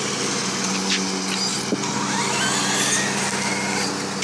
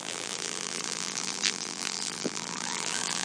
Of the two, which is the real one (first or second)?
first